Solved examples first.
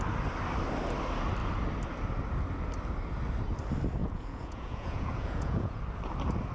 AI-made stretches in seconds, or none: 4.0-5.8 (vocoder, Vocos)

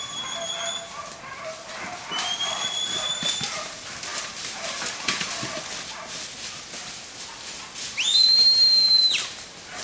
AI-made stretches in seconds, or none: none